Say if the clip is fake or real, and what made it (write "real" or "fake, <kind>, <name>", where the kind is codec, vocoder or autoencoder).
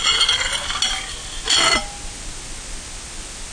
real